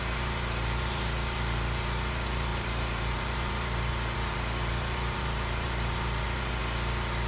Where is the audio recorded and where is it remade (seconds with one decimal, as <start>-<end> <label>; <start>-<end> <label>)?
0.0-6.6 remade; 6.6-7.3 recorded